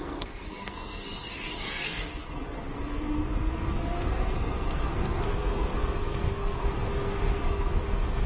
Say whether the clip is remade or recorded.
remade